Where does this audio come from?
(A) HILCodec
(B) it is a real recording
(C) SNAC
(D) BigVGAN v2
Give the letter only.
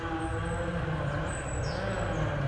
B